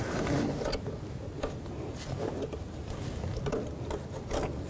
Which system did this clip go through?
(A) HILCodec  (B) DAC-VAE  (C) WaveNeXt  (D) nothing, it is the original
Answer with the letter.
D